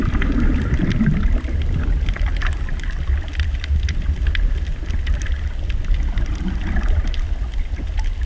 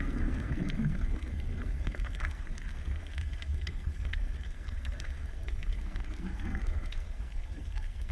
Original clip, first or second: first